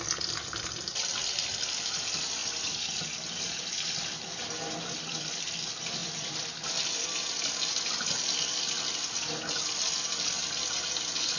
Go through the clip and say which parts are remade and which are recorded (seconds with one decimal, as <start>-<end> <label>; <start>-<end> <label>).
0.0-11.4 recorded